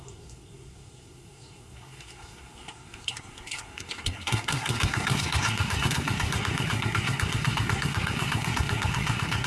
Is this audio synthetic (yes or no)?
yes